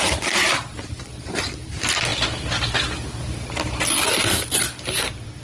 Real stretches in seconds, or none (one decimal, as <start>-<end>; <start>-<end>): 0.0-5.4